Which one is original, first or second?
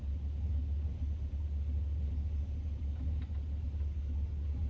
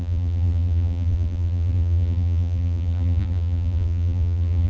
first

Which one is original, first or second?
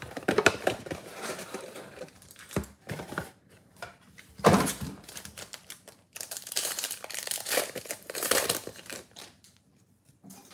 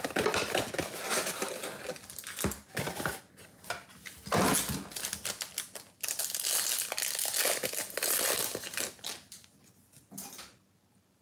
second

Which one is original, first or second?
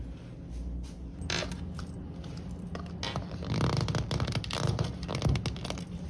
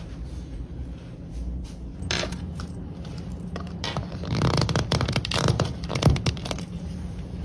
first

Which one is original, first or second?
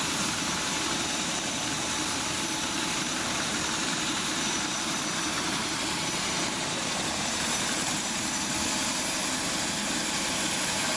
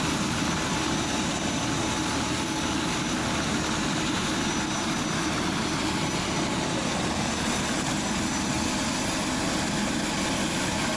second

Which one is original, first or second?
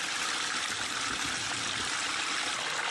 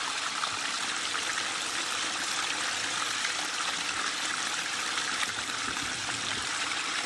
first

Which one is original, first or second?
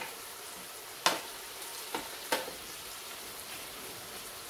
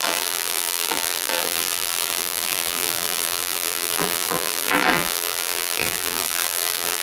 first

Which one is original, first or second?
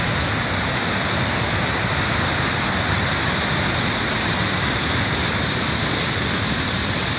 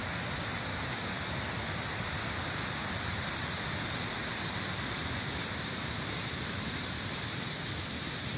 first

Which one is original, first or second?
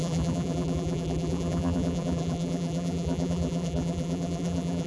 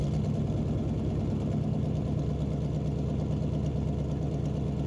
second